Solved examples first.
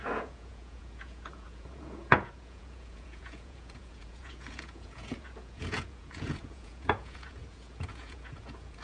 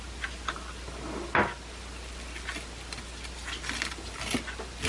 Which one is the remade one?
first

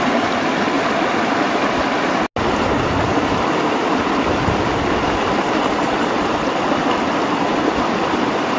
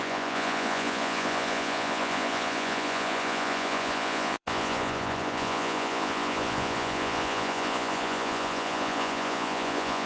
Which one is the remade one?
second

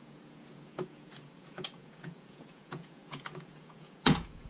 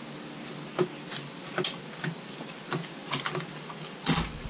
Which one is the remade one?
first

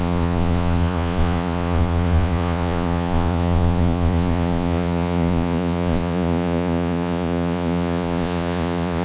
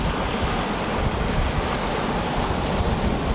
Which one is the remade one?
first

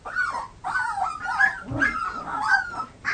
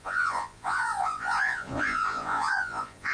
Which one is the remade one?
second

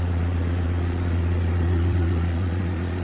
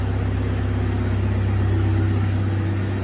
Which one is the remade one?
first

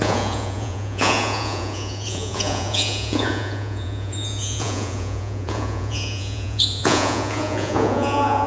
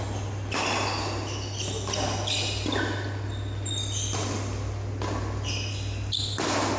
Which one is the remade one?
first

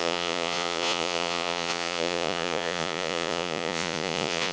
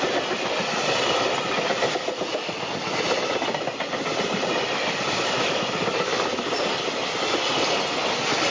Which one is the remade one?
first